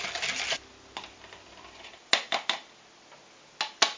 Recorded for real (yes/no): yes